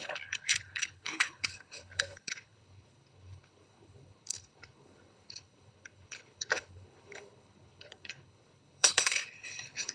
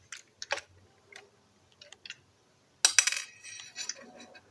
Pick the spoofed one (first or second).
first